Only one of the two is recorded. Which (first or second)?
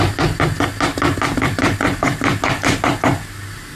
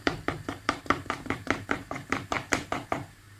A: first